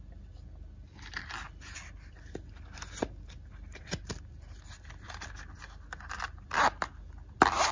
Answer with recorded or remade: recorded